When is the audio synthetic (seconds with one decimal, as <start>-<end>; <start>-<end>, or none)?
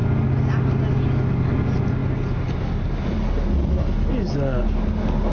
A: none